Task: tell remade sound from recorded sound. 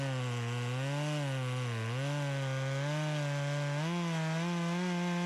recorded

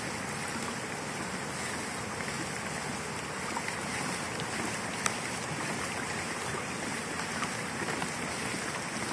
recorded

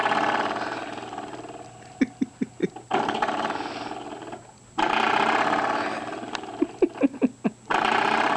recorded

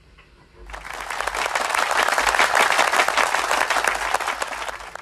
recorded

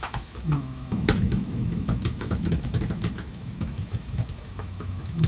remade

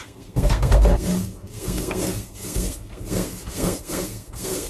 remade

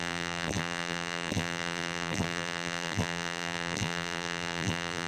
remade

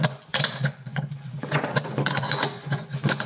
remade